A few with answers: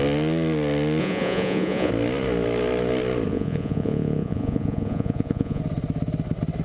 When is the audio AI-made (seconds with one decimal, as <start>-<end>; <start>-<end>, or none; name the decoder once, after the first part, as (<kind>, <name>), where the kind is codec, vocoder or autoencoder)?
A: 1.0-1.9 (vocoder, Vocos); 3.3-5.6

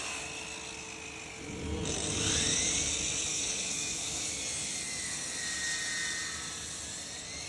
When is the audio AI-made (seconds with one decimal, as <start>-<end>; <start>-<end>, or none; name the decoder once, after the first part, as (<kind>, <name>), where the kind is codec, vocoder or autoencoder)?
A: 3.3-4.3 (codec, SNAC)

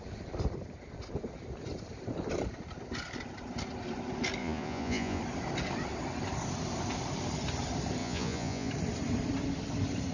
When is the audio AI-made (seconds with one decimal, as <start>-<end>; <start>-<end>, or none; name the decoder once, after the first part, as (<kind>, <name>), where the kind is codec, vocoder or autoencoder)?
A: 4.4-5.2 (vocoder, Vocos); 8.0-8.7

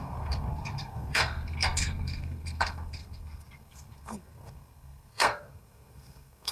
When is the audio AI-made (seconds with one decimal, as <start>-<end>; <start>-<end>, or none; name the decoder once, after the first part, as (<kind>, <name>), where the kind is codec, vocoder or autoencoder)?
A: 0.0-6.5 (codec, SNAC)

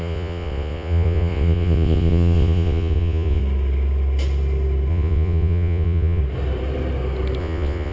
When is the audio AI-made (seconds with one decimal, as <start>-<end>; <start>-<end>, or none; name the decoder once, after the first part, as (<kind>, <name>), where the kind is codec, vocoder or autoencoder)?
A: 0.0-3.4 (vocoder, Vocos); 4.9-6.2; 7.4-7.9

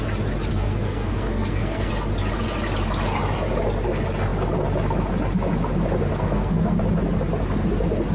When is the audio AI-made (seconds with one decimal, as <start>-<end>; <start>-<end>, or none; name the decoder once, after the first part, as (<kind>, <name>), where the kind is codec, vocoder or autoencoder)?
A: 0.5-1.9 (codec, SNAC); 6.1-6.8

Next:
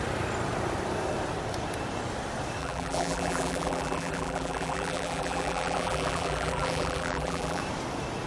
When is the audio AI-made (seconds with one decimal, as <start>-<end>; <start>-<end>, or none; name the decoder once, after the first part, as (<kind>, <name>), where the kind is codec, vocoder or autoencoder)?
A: 2.6-7.6 (vocoder, BigVGAN v2)